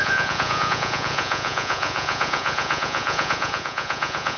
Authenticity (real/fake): fake